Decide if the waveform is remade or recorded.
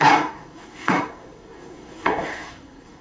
remade